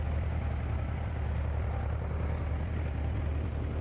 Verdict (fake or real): real